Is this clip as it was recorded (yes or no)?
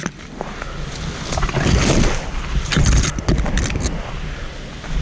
yes